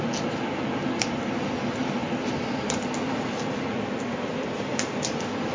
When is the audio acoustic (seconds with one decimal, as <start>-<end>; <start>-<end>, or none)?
0.0-5.5